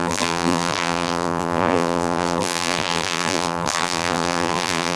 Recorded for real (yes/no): no